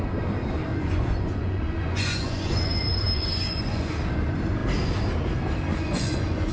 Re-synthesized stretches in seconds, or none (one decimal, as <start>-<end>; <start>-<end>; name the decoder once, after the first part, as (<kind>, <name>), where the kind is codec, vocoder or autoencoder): 0.7-4.1 (vocoder, Vocos); 5.7-6.5